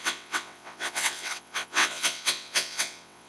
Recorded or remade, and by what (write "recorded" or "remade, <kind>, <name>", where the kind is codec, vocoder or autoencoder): remade, vocoder, WaveNeXt